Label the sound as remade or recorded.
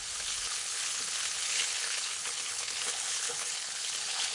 remade